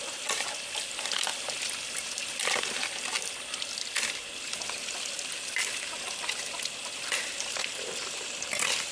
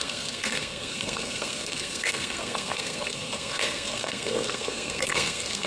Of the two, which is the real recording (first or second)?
first